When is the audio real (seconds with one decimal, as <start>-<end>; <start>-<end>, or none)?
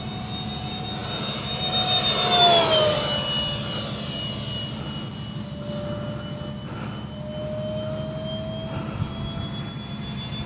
0.0-10.5